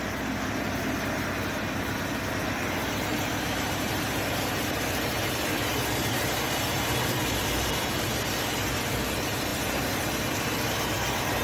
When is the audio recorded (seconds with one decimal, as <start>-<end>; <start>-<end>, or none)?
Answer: 0.0-2.8; 8.1-11.4